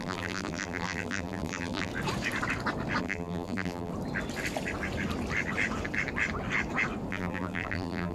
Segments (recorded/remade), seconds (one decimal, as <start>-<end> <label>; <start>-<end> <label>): 0.0-1.9 remade; 1.9-3.0 recorded; 3.0-3.9 remade; 3.9-7.1 recorded; 7.1-8.1 remade